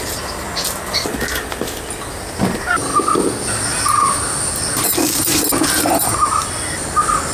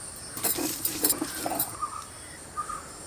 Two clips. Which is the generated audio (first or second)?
second